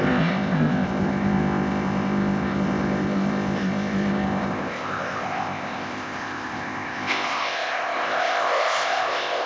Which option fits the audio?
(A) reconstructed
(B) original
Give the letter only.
A